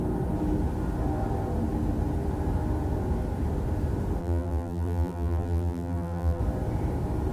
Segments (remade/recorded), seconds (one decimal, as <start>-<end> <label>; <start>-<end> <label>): 0.0-4.2 recorded; 4.2-6.4 remade; 6.4-7.3 recorded